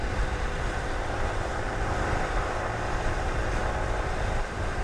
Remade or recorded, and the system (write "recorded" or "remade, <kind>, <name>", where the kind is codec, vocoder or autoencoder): remade, vocoder, BigVGAN v2